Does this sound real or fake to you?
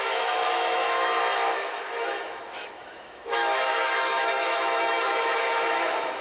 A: fake